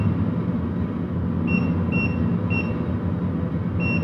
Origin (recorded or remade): recorded